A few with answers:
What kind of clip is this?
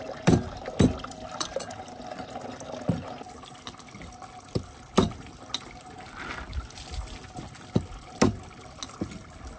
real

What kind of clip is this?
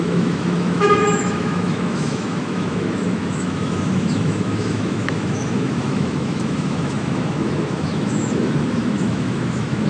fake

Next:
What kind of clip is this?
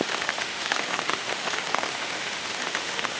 fake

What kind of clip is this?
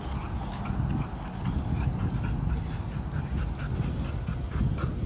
real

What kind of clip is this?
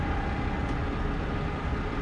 real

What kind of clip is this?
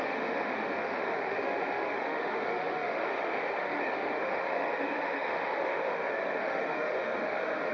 fake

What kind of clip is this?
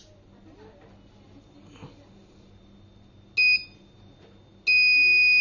real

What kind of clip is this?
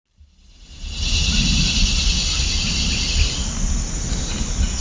real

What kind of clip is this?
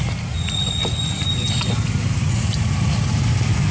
real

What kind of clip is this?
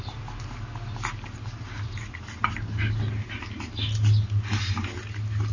real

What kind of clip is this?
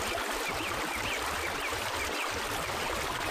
real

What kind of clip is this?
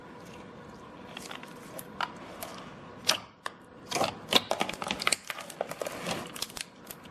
real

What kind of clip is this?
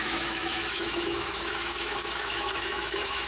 fake